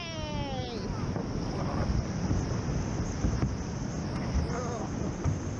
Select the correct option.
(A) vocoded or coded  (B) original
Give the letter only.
B